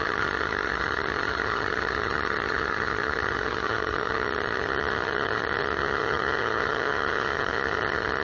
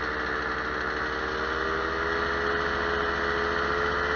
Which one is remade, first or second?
first